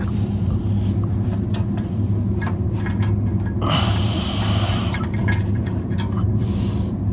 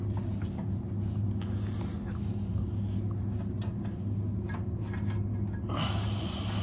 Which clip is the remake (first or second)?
first